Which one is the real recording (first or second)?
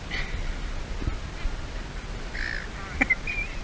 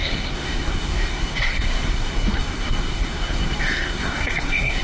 first